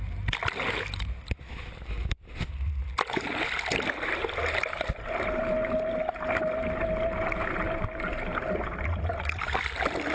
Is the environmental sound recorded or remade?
recorded